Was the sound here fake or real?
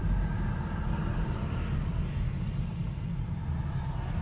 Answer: real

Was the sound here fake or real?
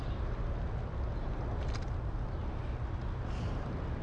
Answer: real